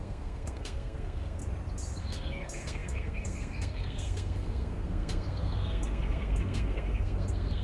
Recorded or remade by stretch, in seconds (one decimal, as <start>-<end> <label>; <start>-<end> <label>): 0.0-1.4 remade; 1.4-2.0 recorded; 2.0-7.6 remade

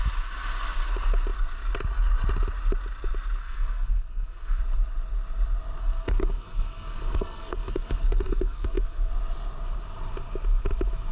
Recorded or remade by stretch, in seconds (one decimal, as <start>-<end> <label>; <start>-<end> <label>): 0.0-3.4 recorded; 3.4-4.6 remade; 4.6-5.8 recorded; 5.8-9.1 remade; 9.1-11.1 recorded

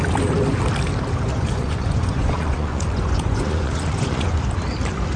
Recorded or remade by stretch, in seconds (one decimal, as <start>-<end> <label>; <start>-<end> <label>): 0.0-1.3 recorded; 1.3-4.4 remade; 4.4-5.2 recorded

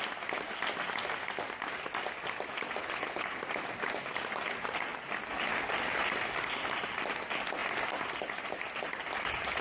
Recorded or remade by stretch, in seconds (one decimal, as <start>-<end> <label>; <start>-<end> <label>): 0.0-2.8 recorded; 2.8-3.4 remade; 3.4-9.6 recorded

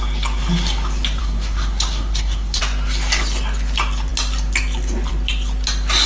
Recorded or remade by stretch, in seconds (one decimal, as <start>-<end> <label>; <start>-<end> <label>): 0.0-1.2 recorded; 1.2-2.6 remade; 2.6-6.1 recorded

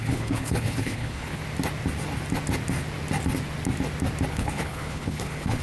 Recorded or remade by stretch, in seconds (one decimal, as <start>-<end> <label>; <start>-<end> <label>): 0.0-1.4 remade; 1.4-4.3 recorded; 4.3-5.6 remade